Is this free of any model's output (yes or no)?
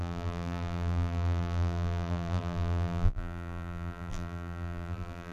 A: no